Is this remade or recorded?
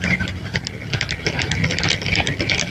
recorded